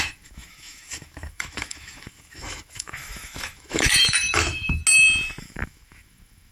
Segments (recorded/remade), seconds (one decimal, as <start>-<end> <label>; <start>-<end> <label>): 0.0-4.8 remade; 4.8-5.4 recorded; 5.4-6.5 remade